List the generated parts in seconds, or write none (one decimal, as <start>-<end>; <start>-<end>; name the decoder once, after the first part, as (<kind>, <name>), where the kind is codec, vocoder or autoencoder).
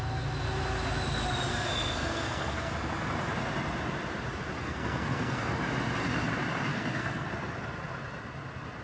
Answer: 1.5-2.7 (codec, SNAC); 4.6-5.5; 6.7-7.3